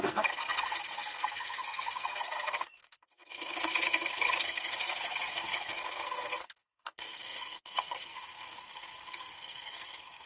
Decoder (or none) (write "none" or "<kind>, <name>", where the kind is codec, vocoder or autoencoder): codec, SNAC